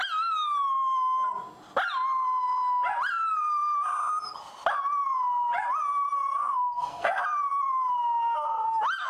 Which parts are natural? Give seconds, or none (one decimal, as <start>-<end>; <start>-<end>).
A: 0.0-6.4; 7.2-9.1